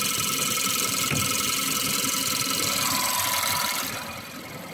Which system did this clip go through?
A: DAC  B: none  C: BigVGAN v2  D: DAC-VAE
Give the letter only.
B